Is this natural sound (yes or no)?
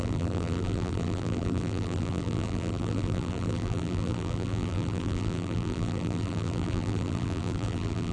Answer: no